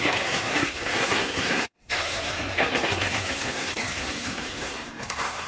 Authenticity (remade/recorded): remade